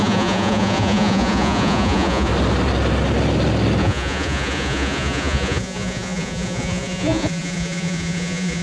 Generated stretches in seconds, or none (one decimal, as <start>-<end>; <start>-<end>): 0.0-2.3; 3.8-8.6